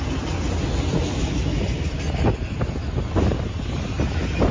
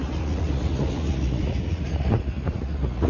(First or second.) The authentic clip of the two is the first